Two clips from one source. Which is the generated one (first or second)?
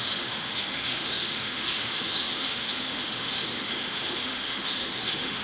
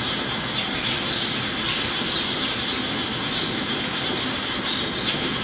first